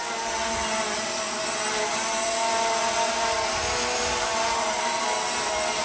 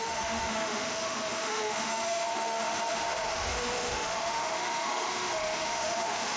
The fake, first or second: second